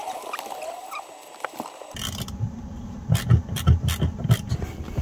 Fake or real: real